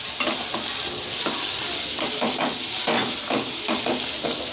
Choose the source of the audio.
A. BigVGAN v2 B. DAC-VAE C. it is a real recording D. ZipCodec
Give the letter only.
C